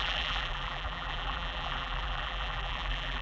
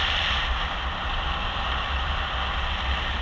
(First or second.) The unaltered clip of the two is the second